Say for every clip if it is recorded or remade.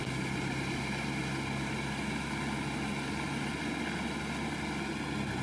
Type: recorded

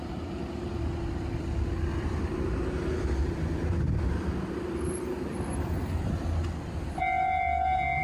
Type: remade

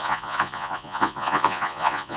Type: remade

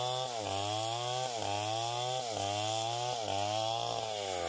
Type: recorded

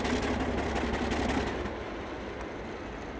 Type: recorded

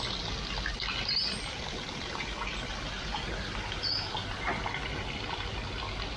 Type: recorded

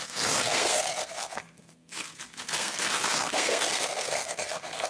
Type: remade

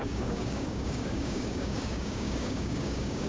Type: remade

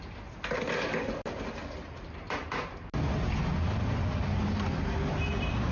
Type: recorded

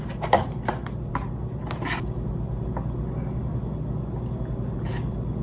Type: recorded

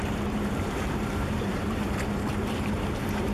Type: remade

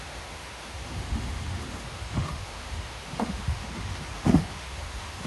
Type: remade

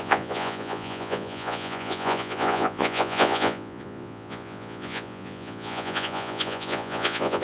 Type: remade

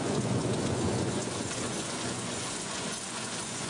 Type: remade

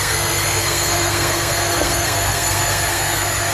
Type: remade